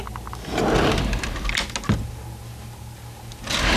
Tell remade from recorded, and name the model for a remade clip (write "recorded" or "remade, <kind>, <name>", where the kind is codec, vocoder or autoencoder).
recorded